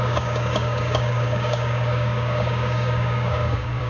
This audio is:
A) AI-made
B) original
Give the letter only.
A